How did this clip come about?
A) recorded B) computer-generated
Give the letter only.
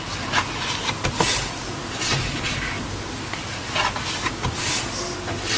A